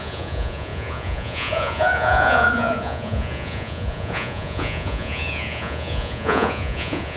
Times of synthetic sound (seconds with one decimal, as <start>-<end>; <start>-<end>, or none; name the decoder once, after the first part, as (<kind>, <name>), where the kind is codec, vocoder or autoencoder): 0.0-7.2 (vocoder, Vocos)